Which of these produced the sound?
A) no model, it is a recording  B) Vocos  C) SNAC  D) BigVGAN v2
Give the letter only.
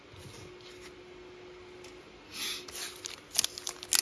A